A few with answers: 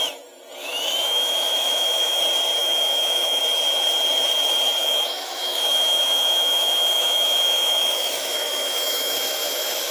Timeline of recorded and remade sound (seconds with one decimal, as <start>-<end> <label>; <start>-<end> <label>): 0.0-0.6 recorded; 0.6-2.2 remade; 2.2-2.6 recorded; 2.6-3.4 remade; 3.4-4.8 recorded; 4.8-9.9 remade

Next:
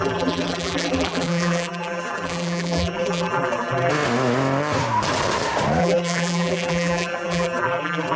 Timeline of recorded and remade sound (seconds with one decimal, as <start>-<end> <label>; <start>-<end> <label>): 0.0-3.9 remade; 3.9-5.8 recorded; 5.8-8.2 remade

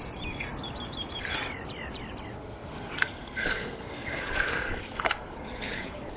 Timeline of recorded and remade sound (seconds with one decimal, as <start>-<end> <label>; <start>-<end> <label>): 0.0-2.3 recorded; 2.3-6.2 remade

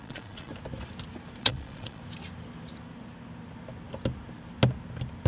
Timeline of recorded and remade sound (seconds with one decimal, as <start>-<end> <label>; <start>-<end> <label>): 0.0-0.5 remade; 0.5-1.4 recorded; 1.4-2.0 remade; 2.0-5.3 recorded

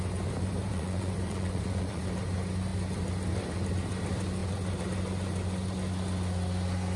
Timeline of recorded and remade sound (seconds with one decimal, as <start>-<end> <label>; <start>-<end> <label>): 0.0-0.7 recorded; 0.7-2.1 remade; 2.1-7.0 recorded

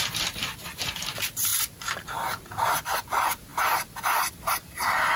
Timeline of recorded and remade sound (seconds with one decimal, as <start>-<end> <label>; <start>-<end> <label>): 0.0-5.2 remade